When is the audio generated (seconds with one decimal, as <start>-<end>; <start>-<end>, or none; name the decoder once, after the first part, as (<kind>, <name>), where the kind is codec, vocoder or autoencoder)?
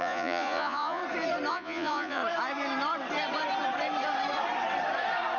0.0-1.0 (vocoder, Vocos); 1.5-2.2